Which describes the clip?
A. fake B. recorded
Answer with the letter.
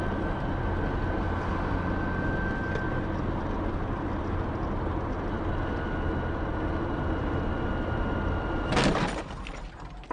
B